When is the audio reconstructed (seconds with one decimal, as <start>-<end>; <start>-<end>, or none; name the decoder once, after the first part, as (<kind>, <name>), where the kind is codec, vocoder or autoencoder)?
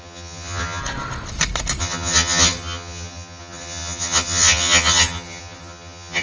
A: 0.0-0.8 (vocoder, HiFi-GAN); 1.8-6.2